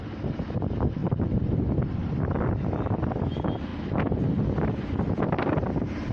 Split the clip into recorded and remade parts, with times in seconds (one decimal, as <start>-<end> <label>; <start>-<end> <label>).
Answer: 0.0-6.1 recorded